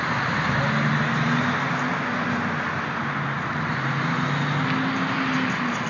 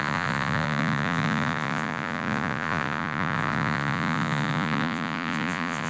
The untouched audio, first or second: first